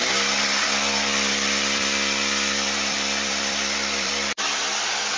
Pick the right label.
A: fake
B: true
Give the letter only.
A